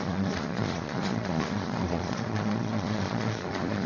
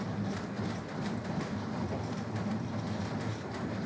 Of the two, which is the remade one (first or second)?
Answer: first